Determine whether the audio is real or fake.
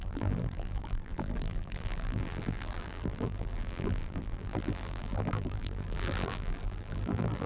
fake